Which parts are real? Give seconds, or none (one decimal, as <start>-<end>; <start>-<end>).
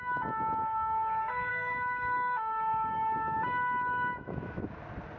0.0-1.5; 4.6-5.2